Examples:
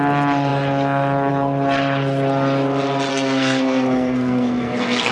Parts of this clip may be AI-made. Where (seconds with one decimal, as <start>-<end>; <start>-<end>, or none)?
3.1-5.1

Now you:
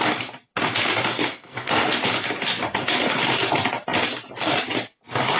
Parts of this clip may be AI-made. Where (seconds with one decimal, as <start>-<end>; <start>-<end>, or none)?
1.1-1.9

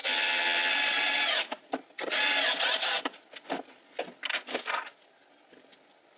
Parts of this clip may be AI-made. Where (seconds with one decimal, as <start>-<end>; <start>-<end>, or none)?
0.0-0.7

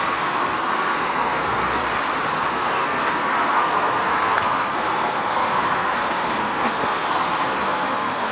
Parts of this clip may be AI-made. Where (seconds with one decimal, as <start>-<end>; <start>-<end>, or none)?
0.0-1.8; 2.5-8.3

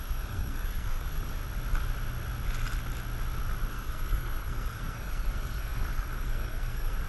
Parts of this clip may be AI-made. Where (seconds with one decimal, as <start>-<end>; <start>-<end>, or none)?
0.0-1.4; 3.7-7.1

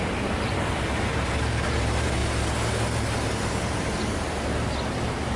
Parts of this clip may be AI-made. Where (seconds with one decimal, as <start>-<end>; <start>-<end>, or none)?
0.0-2.2; 3.6-5.4